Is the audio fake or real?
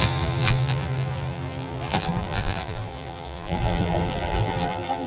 fake